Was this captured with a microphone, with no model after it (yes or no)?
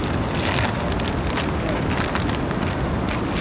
yes